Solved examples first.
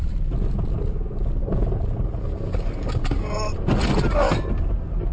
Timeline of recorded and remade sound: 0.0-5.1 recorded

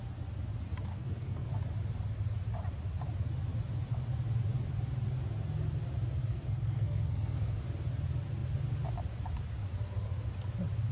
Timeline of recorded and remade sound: 0.0-0.9 recorded; 0.9-1.5 remade; 1.5-6.2 recorded; 6.2-7.6 remade; 7.6-10.9 recorded

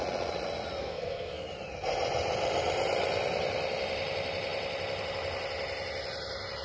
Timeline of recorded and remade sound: 0.0-0.8 recorded; 0.8-1.5 remade; 1.5-6.6 recorded

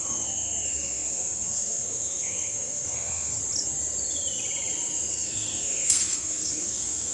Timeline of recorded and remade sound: 0.0-3.4 remade; 3.4-5.1 recorded; 5.1-7.1 remade

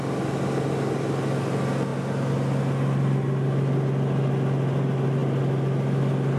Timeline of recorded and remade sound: 0.0-6.4 recorded